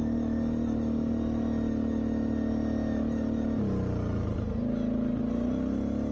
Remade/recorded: recorded